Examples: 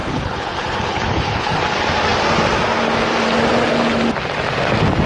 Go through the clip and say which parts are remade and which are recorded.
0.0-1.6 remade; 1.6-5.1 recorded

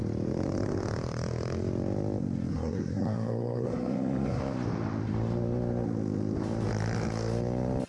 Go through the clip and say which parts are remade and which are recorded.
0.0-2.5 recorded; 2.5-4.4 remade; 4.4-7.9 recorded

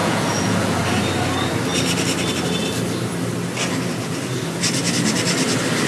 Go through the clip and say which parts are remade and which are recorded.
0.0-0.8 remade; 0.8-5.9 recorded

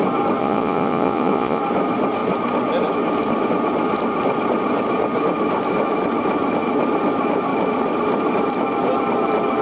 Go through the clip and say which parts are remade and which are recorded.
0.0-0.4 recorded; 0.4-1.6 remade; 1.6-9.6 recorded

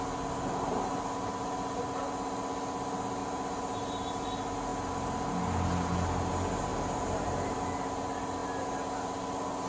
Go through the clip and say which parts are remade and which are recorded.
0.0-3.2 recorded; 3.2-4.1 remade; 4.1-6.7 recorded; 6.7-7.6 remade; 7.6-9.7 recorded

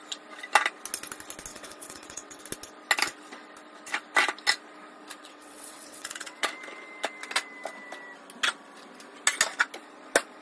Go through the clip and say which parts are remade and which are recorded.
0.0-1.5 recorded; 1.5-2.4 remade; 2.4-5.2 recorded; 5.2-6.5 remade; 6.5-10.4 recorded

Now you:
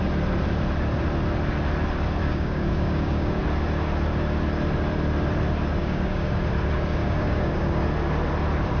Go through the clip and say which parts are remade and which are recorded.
0.0-2.2 recorded; 2.2-3.4 remade; 3.4-5.8 recorded; 5.8-6.4 remade; 6.4-7.0 recorded; 7.0-7.8 remade; 7.8-8.8 recorded

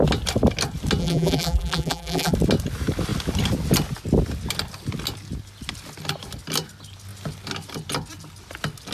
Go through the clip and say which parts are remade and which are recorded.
0.0-1.0 recorded; 1.0-2.3 remade; 2.3-8.9 recorded